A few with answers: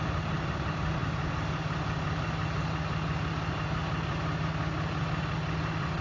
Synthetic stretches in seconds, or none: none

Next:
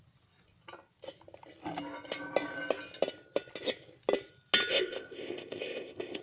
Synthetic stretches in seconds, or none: 4.7-6.2 (codec, ZipCodec)

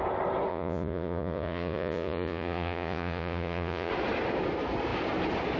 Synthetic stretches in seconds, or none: 0.5-3.9 (vocoder, Vocos)

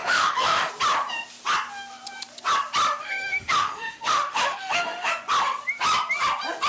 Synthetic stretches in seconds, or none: 0.0-0.7 (autoencoder, DAC-VAE); 3.0-5.1

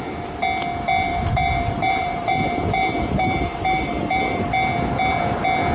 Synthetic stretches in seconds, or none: 1.1-4.5 (vocoder, BigVGAN v2)